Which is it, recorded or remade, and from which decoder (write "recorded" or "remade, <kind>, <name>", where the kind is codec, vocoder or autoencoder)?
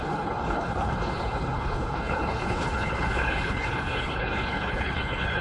remade, codec, HILCodec